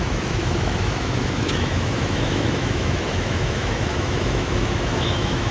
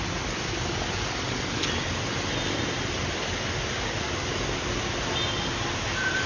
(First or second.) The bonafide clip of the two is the second